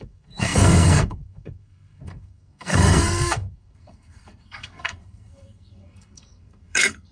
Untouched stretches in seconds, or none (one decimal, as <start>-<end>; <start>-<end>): none